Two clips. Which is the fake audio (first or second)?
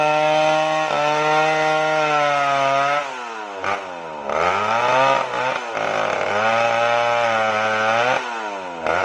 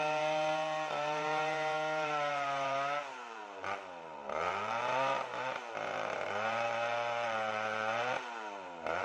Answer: second